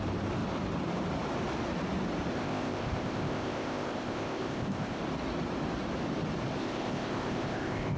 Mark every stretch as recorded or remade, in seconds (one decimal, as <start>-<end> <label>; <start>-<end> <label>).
0.0-2.3 recorded; 2.3-5.0 remade; 5.0-6.6 recorded; 6.6-8.0 remade